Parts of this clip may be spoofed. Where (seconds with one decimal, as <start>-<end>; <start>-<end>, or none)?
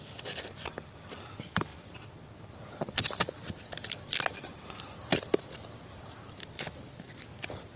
none